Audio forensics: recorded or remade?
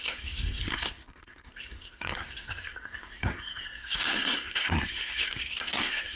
remade